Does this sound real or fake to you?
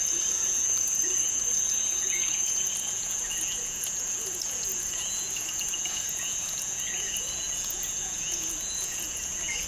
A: fake